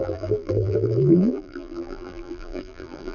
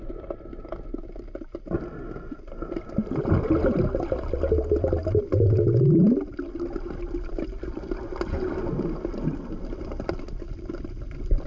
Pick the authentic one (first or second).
second